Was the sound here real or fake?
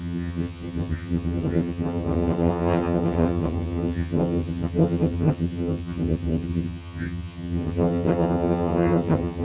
fake